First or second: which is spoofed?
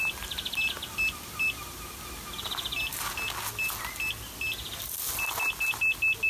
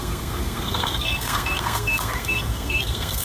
second